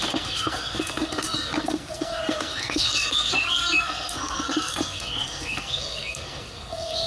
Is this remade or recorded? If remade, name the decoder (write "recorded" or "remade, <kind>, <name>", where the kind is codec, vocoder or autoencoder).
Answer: remade, codec, SNAC